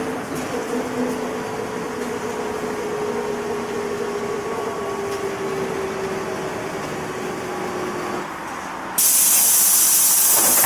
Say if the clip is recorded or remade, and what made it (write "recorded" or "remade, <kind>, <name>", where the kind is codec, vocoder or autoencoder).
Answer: recorded